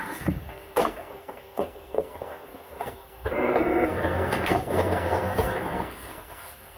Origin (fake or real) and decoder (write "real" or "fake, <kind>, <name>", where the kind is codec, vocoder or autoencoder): fake, codec, SNAC